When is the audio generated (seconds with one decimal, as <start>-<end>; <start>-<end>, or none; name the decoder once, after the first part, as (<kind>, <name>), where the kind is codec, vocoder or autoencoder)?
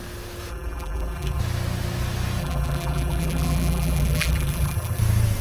0.5-1.4 (vocoder, BigVGAN v2); 2.4-5.0